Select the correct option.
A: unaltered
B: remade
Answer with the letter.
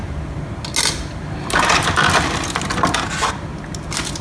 A